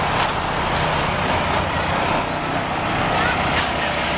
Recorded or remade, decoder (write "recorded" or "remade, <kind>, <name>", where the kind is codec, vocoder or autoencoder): recorded